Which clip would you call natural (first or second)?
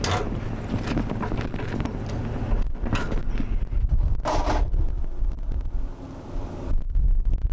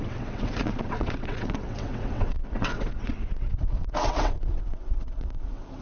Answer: first